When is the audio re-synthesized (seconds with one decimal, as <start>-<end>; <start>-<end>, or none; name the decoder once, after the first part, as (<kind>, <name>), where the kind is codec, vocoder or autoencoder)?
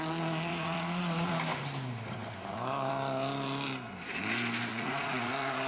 0.5-1.3 (vocoder, Vocos); 4.7-5.3